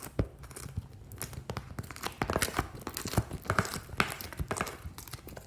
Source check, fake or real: real